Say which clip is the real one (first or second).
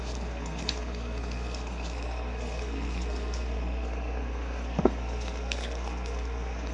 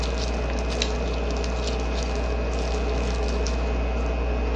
second